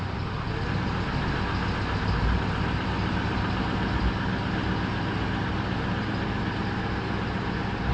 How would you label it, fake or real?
real